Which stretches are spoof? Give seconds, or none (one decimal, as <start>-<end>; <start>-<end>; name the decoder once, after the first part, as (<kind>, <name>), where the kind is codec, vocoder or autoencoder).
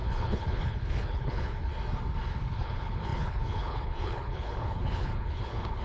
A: 0.0-1.7 (codec, HILCodec); 2.4-5.8